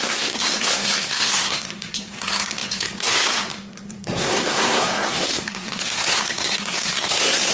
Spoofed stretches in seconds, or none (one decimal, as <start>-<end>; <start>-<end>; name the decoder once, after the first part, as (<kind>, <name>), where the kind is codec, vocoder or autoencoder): 0.0-7.5 (codec, SNAC)